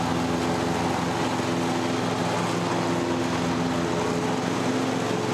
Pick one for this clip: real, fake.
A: real